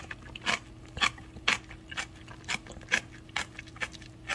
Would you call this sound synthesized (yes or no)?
no